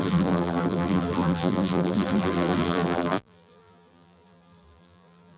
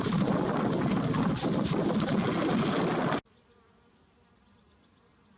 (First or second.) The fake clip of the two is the first